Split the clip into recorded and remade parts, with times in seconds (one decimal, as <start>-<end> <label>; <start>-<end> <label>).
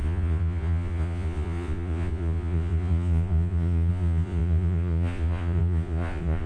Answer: 0.0-6.5 remade